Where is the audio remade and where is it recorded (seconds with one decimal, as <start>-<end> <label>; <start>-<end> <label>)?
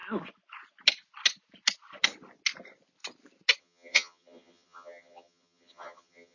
0.0-3.6 recorded; 3.6-6.3 remade